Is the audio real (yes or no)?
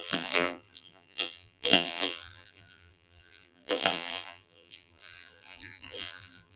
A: no